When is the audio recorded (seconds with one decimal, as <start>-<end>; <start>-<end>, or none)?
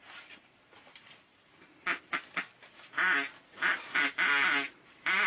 1.9-5.3